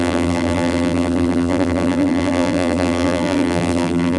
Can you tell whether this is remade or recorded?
remade